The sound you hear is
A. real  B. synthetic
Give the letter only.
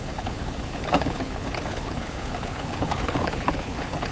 B